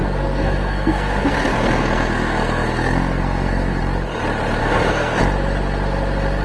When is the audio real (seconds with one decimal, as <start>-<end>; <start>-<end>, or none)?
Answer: 3.8-4.6; 5.2-6.4